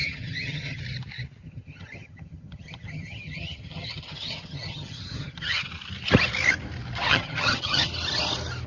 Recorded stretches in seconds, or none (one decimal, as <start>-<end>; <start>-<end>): 0.8-1.4; 5.7-7.1; 7.9-8.7

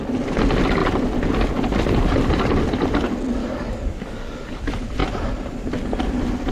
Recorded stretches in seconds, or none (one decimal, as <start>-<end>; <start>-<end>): 0.0-3.4; 4.6-6.5

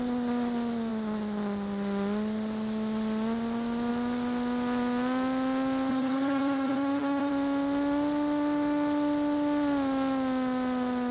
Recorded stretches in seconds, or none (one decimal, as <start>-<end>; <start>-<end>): 0.0-5.9; 7.3-11.1

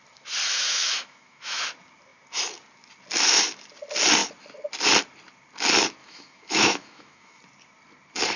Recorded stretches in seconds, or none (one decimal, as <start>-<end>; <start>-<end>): 0.0-0.4; 1.6-6.0; 7.4-8.4

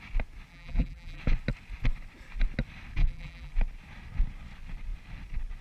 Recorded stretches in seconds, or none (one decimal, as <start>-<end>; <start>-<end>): 0.0-0.5; 1.2-3.0; 3.5-5.6

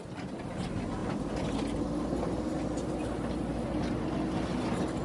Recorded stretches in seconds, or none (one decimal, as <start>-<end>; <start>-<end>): 0.0-5.0

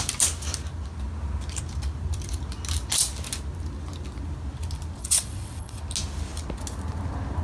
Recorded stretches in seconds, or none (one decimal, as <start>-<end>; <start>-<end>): 0.0-5.0; 5.8-7.4

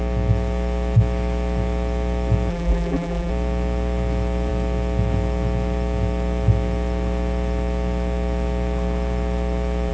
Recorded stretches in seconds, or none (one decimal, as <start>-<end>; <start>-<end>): 0.0-2.5; 3.3-9.9